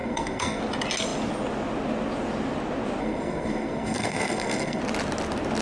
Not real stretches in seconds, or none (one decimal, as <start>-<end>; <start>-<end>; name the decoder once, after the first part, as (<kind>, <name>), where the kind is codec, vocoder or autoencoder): 0.0-0.6 (codec, SNAC); 3.0-4.8